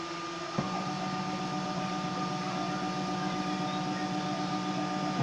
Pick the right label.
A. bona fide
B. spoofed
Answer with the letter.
A